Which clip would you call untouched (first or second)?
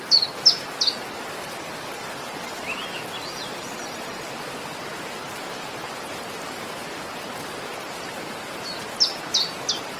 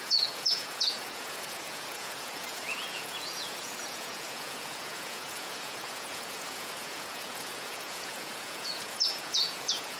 first